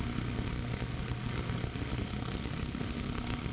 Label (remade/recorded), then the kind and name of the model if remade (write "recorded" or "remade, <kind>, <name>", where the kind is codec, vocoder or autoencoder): remade, codec, SNAC